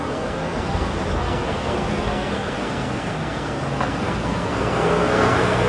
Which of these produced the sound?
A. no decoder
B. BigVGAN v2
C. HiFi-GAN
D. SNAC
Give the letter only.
D